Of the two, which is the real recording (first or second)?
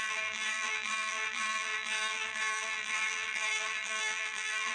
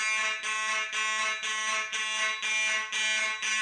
second